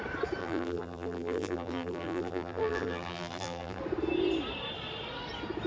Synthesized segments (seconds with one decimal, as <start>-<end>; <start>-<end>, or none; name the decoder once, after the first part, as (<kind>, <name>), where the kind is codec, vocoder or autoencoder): 0.4-3.8 (vocoder, BigVGAN v2)